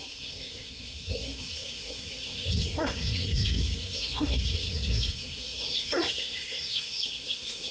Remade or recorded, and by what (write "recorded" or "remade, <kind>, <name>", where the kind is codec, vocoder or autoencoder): remade, codec, SNAC